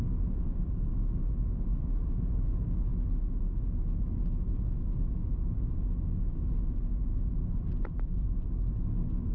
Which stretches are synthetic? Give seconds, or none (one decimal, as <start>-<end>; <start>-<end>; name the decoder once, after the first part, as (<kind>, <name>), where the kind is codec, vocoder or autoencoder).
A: none